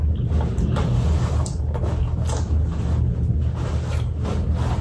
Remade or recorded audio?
recorded